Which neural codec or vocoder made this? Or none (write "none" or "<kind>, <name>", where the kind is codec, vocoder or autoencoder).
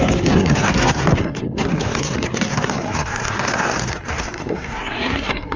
codec, SNAC